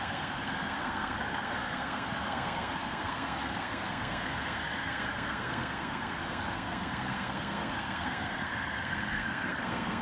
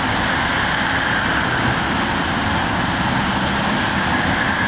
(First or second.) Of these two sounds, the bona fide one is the second